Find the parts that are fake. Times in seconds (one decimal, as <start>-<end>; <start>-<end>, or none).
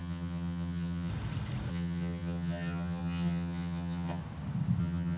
0.0-1.1; 1.7-4.2; 4.8-5.2